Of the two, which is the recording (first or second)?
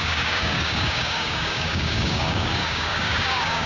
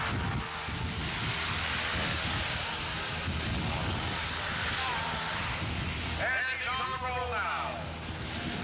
second